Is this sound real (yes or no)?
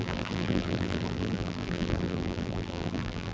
no